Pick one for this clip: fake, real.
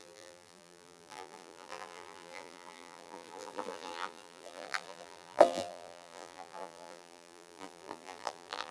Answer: fake